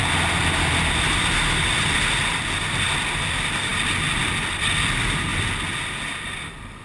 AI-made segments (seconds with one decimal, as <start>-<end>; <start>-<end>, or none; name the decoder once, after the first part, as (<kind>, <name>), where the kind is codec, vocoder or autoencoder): 3.2-3.7 (vocoder, BigVGAN v2); 4.2-5.3; 6.1-6.8